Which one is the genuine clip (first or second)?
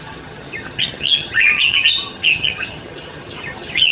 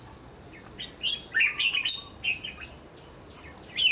second